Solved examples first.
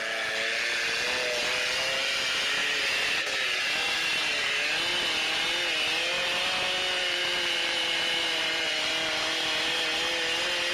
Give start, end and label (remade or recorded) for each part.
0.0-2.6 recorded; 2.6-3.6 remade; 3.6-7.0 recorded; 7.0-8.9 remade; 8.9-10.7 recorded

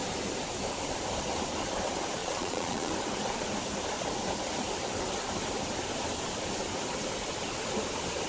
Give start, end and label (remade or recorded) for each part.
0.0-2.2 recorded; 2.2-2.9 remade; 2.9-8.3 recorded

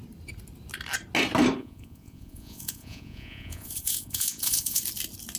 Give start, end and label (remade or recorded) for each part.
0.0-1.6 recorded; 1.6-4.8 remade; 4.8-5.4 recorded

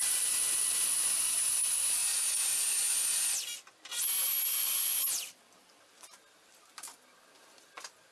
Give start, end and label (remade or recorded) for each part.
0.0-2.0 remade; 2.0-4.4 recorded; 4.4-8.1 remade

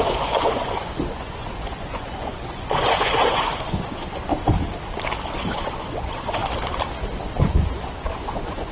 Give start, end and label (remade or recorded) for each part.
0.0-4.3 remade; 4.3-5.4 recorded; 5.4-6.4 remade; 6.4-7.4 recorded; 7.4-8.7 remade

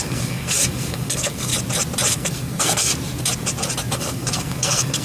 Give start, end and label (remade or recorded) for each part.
0.0-1.5 remade; 1.5-2.1 recorded; 2.1-2.9 remade; 2.9-3.9 recorded; 3.9-5.0 remade

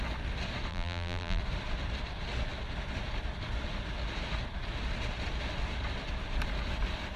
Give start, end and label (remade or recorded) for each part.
0.0-0.7 recorded; 0.7-1.4 remade; 1.4-7.2 recorded